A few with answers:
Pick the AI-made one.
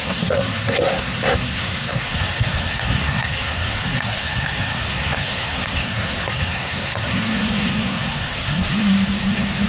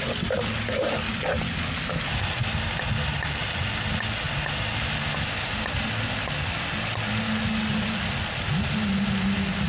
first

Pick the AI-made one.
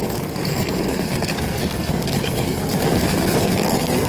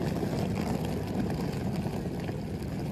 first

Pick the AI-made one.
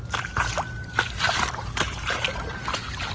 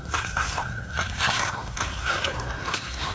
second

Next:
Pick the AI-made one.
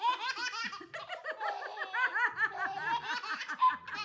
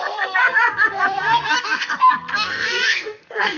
second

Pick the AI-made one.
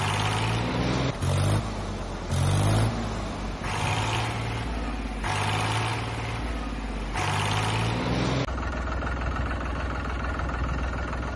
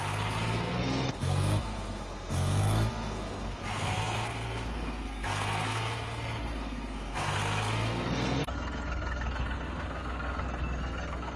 second